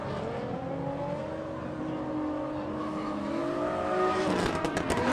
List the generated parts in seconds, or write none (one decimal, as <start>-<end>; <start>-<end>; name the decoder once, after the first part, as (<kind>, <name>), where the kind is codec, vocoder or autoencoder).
2.8-3.4 (autoencoder, DAC-VAE)